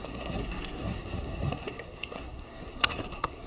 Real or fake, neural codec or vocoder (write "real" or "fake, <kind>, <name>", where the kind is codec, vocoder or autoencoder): fake, codec, SNAC